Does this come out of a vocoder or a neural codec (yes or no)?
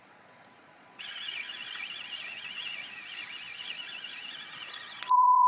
yes